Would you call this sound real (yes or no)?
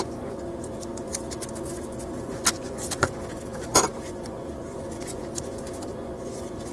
no